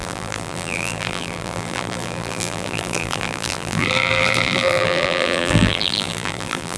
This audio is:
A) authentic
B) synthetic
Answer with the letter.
B